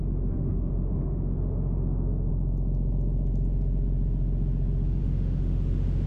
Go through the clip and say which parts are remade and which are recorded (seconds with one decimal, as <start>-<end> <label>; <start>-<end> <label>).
0.0-2.3 remade; 2.3-5.0 recorded; 5.0-6.1 remade